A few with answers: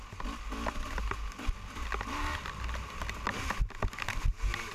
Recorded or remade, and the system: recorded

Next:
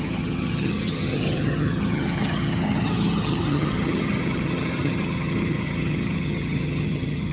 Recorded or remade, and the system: remade, vocoder, HiFi-GAN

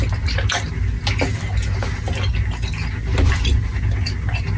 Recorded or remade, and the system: recorded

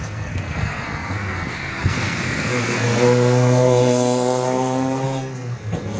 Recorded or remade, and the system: remade, codec, SNAC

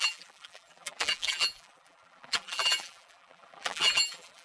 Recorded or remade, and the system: remade, vocoder, BigVGAN v2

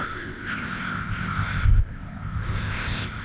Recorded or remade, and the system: remade, codec, ZipCodec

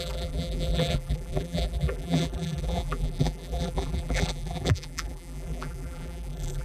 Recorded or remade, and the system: remade, vocoder, BigVGAN v2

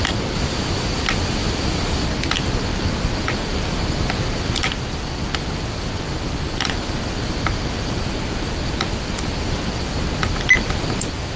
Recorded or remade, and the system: recorded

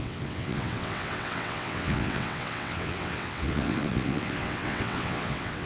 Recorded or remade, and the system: remade, vocoder, WaveNeXt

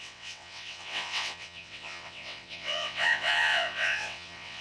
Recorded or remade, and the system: remade, vocoder, WaveNeXt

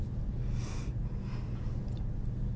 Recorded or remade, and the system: recorded